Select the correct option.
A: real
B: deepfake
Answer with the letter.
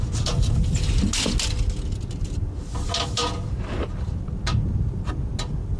A